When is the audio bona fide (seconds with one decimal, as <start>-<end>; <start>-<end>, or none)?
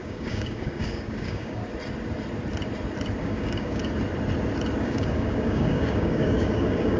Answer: 1.6-3.2; 3.8-4.8